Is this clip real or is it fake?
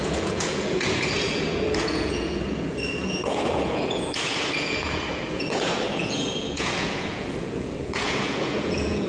fake